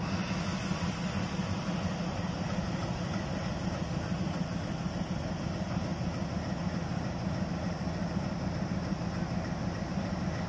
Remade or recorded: recorded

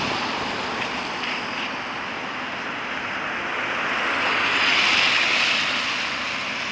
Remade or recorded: recorded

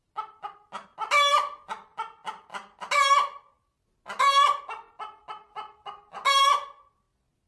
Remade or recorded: recorded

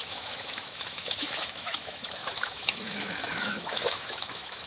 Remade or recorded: remade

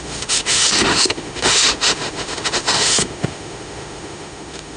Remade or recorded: remade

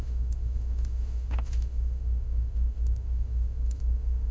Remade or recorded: remade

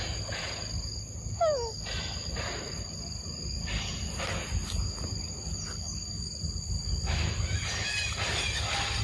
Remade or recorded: recorded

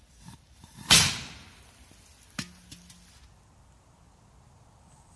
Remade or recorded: recorded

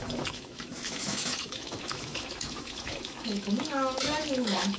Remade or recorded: remade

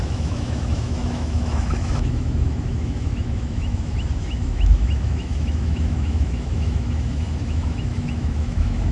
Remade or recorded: remade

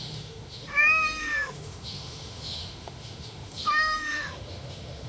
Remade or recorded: remade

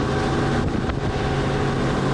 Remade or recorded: recorded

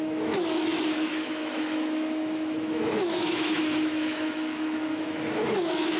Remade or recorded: remade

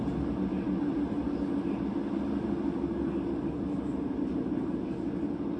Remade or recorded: recorded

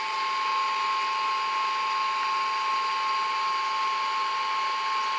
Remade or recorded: recorded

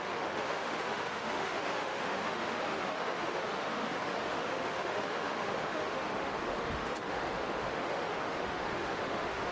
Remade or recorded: remade